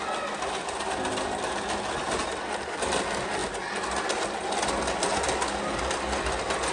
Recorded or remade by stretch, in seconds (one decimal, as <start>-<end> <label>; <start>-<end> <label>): 0.0-6.7 recorded

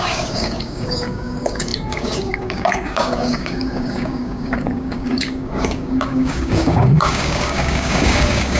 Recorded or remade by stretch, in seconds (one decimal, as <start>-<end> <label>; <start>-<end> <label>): 0.0-8.6 remade